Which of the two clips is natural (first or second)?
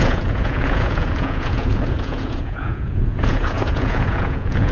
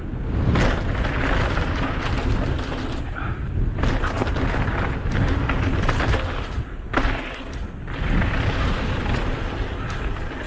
second